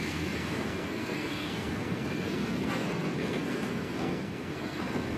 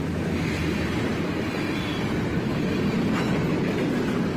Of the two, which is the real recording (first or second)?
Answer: second